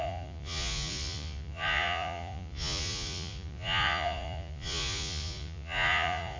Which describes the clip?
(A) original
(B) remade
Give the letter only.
B